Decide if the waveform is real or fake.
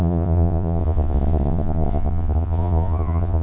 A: fake